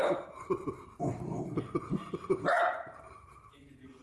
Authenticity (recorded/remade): remade